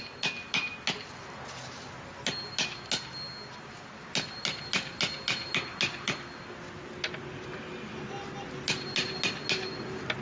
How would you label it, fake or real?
real